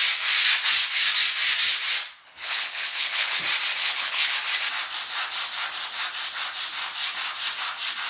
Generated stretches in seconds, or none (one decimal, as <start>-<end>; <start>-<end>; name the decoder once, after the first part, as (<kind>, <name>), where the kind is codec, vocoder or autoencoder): 2.2-3.4 (codec, HILCodec); 3.8-4.3